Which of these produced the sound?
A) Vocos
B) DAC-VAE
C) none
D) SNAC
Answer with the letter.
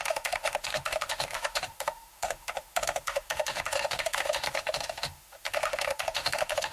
B